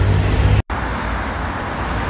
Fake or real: real